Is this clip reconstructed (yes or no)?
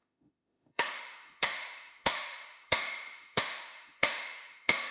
yes